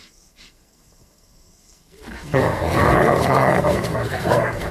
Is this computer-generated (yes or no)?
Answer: yes